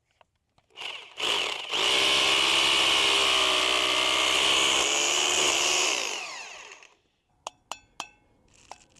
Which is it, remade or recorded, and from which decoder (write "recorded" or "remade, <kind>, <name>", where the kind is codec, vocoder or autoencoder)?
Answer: recorded